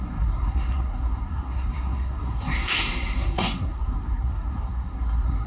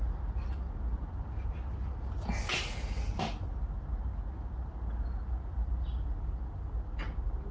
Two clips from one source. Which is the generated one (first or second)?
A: first